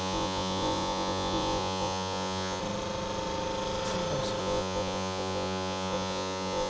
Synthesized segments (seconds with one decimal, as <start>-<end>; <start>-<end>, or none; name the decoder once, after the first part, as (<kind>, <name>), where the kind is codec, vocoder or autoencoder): 0.0-2.6 (vocoder, Vocos); 4.4-6.7